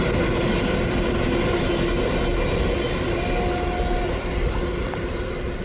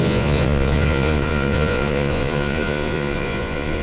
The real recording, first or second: first